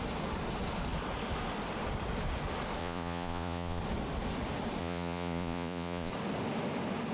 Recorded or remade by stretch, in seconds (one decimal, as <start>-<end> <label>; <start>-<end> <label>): 0.0-2.8 recorded; 2.8-3.8 remade; 3.8-4.8 recorded; 4.8-6.1 remade; 6.1-7.1 recorded